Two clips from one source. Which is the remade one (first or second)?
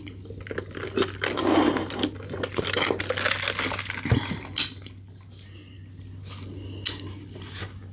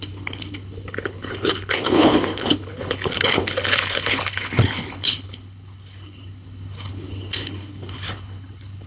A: second